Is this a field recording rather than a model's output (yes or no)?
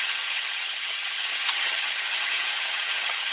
no